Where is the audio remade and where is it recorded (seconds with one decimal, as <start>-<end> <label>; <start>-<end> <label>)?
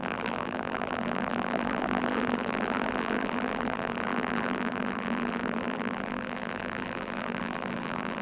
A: 0.0-8.2 remade